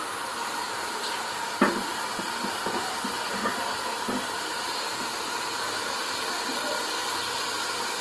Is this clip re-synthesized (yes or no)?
no